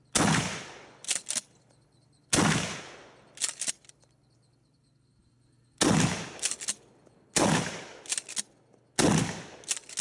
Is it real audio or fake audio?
real